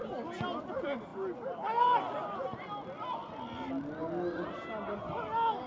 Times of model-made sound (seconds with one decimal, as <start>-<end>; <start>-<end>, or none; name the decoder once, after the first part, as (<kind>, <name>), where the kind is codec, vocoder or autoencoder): none